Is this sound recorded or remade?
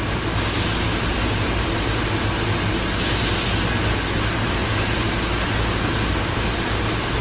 recorded